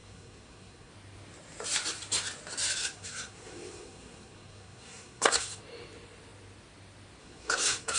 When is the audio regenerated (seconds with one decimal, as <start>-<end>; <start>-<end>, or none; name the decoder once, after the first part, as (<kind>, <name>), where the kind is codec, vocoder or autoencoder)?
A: 0.0-0.9 (codec, SNAC); 2.8-5.6; 7.2-8.0